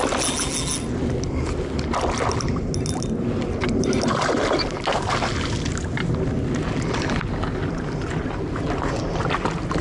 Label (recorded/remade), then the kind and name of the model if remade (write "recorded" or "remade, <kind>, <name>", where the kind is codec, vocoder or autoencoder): recorded